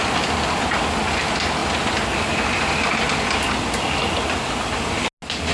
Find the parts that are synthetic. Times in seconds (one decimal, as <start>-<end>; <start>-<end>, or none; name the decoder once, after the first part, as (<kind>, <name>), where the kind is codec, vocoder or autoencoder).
none